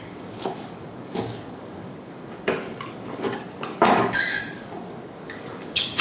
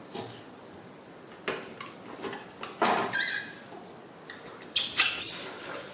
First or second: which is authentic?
second